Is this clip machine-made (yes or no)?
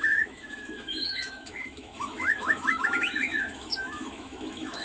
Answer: yes